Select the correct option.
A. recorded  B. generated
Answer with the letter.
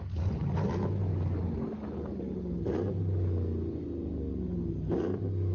A